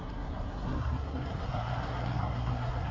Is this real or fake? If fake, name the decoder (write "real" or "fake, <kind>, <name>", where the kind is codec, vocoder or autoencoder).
fake, codec, SNAC